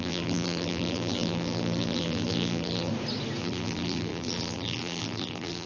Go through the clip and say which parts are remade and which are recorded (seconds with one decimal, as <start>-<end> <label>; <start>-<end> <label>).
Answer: 0.0-2.9 remade; 2.9-3.4 recorded; 3.4-5.7 remade